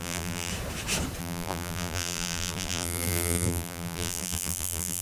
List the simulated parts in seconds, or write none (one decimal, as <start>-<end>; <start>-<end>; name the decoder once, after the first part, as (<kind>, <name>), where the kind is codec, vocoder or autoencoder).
0.0-0.5 (vocoder, BigVGAN v2); 1.2-5.0